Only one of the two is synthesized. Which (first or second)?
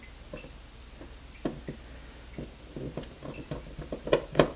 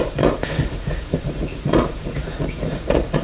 second